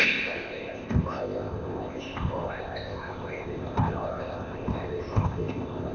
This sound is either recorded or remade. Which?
remade